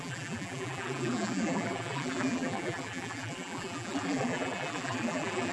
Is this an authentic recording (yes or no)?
no